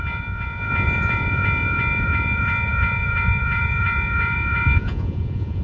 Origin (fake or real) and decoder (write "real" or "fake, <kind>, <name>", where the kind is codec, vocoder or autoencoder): fake, vocoder, Vocos